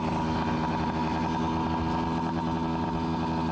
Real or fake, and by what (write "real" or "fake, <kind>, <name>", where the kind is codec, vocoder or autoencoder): real